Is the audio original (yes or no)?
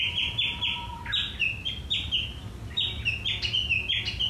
yes